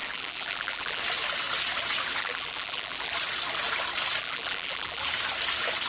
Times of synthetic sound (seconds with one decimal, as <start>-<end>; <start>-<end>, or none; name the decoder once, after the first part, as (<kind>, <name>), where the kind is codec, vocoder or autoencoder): 0.0-1.0 (vocoder, BigVGAN v2); 2.2-3.1; 4.2-5.0